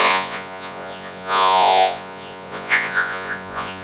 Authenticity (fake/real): fake